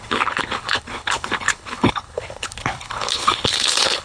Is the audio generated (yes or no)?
yes